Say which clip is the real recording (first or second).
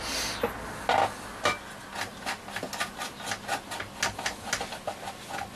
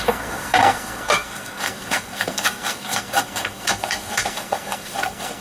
first